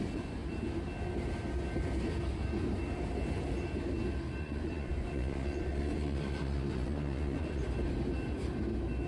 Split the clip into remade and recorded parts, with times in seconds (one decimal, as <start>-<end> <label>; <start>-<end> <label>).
0.0-0.4 remade; 0.4-4.4 recorded; 4.4-7.6 remade; 7.6-9.1 recorded

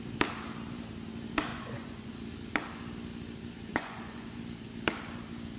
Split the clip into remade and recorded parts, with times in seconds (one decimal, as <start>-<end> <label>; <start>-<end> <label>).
0.0-1.5 recorded; 1.5-2.1 remade; 2.1-3.7 recorded; 3.7-4.4 remade; 4.4-5.6 recorded

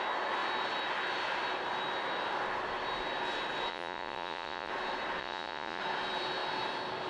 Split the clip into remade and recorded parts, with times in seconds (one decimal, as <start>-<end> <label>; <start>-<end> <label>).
0.0-3.7 recorded; 3.7-4.7 remade; 4.7-5.2 recorded; 5.2-5.8 remade; 5.8-7.1 recorded

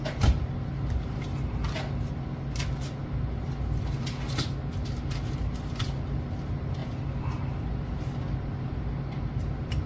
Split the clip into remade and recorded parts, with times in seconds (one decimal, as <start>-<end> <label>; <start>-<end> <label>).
0.0-9.9 recorded

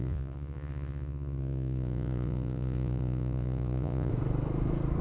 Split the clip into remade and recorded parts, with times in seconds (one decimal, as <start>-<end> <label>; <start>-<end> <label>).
0.0-4.1 remade; 4.1-5.0 recorded